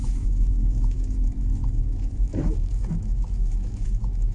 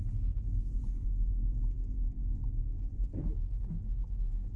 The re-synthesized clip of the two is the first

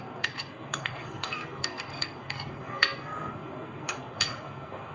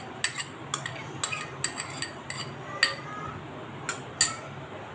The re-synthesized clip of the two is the first